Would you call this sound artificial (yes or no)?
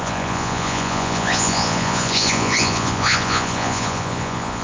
yes